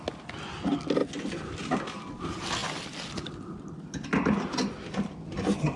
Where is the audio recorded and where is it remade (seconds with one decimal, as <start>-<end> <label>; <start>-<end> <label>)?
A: 0.0-5.8 recorded